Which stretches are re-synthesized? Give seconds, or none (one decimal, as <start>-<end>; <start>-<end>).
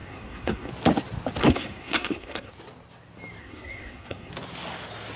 0.0-0.7; 1.4-2.5; 3.4-4.3